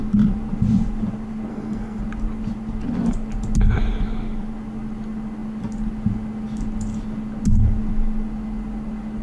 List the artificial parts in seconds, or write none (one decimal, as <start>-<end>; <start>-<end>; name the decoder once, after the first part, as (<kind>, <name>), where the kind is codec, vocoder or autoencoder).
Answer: 1.5-2.0 (codec, SNAC)